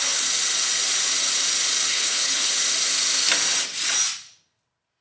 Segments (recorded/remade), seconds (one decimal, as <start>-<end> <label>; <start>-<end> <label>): 0.0-1.9 recorded; 1.9-2.5 remade; 2.5-5.0 recorded